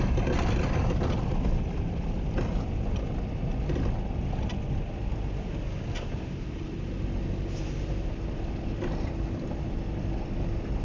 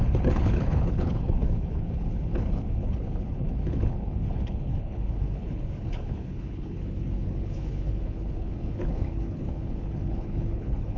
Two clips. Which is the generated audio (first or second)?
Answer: second